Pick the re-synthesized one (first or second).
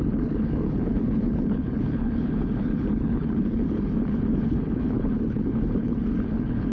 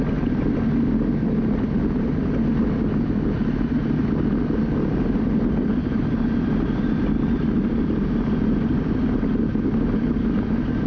first